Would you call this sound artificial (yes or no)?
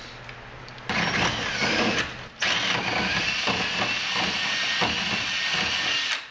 no